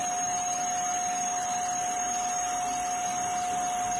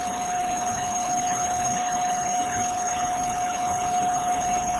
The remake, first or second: second